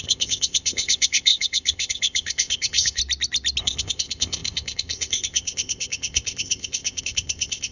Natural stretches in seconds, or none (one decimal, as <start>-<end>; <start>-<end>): 3.0-3.6